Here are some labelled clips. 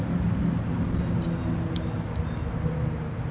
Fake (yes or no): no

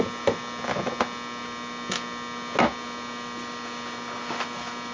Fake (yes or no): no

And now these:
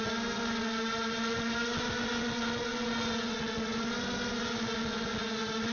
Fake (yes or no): no